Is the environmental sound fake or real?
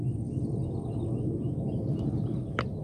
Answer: fake